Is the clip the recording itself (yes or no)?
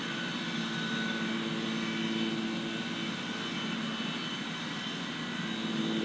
yes